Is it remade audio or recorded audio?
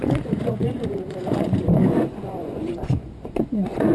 remade